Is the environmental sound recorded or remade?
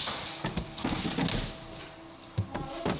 recorded